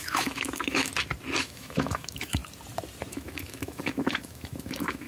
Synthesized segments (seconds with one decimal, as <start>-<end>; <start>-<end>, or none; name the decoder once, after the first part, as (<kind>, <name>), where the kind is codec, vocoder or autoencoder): 0.0-0.9 (autoencoder, DAC-VAE); 1.4-2.4; 3.1-5.1